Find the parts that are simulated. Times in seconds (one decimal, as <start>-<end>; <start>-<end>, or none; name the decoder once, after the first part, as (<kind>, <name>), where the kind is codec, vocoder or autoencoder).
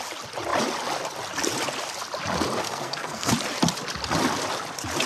2.6-3.3 (codec, SNAC)